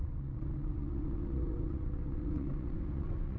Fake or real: fake